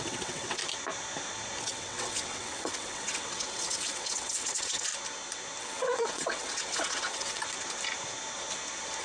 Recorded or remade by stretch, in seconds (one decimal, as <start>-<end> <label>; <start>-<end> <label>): 0.0-0.6 remade; 0.6-1.6 recorded; 1.6-4.9 remade; 4.9-5.6 recorded; 5.6-7.4 remade; 7.4-9.0 recorded